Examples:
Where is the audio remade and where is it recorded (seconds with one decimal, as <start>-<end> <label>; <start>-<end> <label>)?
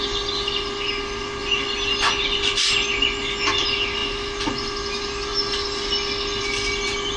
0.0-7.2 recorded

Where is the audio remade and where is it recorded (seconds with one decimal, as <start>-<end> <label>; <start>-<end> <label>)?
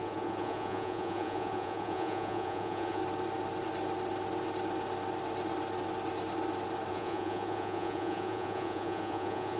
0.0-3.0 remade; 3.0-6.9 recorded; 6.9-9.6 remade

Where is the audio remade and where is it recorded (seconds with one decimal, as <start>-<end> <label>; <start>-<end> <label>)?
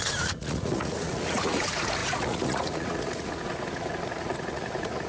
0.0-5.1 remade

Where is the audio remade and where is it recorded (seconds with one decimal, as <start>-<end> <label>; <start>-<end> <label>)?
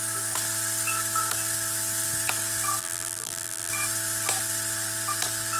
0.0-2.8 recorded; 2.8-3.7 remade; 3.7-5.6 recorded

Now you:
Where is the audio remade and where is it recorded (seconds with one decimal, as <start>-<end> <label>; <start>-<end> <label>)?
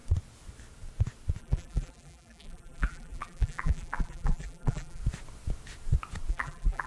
0.0-1.4 recorded; 1.4-5.0 remade; 5.0-6.3 recorded; 6.3-6.9 remade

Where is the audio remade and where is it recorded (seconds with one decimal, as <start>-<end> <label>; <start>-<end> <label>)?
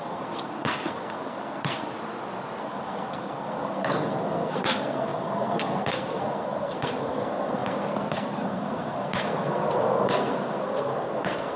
0.0-1.9 remade; 1.9-2.6 recorded; 2.6-11.6 remade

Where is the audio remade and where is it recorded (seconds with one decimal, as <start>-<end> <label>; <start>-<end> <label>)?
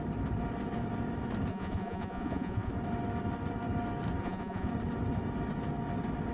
0.0-1.5 recorded; 1.5-2.7 remade; 2.7-4.2 recorded; 4.2-4.7 remade; 4.7-6.3 recorded